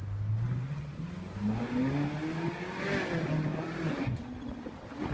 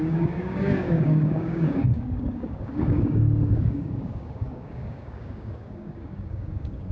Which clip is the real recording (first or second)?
first